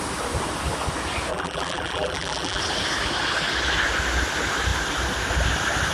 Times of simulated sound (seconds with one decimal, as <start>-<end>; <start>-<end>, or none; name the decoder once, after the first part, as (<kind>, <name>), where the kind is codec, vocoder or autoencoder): 1.3-2.6 (vocoder, BigVGAN v2)